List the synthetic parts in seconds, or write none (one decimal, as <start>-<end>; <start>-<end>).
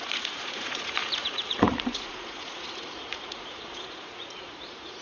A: 0.0-5.0